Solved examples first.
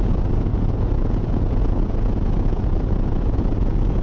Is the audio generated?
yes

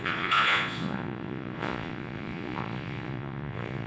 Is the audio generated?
yes